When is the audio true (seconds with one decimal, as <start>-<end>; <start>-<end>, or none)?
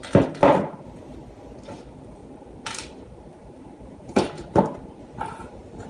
0.0-2.2